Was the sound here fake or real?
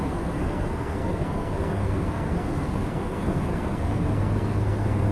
fake